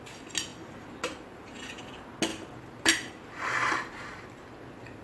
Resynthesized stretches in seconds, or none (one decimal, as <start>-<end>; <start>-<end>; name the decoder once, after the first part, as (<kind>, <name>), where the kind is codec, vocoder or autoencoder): 0.5-1.8 (vocoder, BigVGAN v2); 2.3-3.9